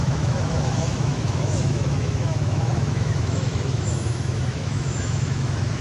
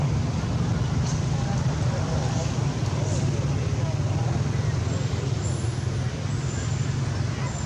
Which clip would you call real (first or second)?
second